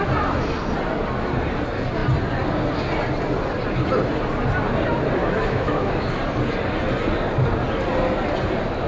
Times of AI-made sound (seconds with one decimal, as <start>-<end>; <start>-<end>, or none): 5.2-5.9